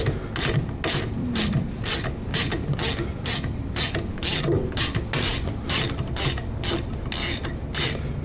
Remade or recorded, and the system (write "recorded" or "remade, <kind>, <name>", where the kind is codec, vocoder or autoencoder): recorded